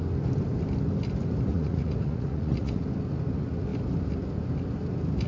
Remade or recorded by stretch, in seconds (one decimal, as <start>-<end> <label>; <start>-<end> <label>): 0.0-1.5 recorded; 1.5-2.8 remade; 2.8-5.3 recorded

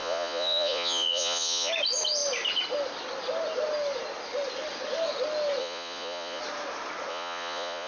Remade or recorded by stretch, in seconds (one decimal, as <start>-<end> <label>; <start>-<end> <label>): 0.0-1.7 remade; 1.7-5.6 recorded; 5.6-6.4 remade; 6.4-7.1 recorded; 7.1-7.9 remade

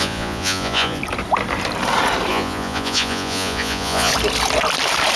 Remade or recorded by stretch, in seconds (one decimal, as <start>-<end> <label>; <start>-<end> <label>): 0.0-1.0 remade; 1.0-2.3 recorded; 2.3-4.1 remade; 4.1-5.2 recorded

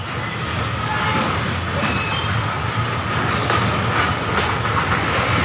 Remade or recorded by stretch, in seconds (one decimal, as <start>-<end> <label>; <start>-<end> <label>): 0.0-5.4 recorded

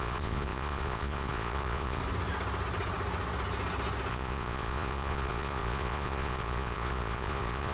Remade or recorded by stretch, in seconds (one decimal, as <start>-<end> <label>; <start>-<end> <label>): 0.0-2.0 remade; 2.0-4.1 recorded; 4.1-7.7 remade

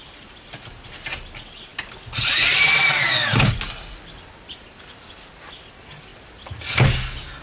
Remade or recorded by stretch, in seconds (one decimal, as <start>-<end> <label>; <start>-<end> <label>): 0.0-7.4 recorded